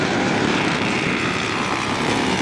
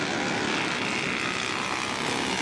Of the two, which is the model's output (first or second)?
first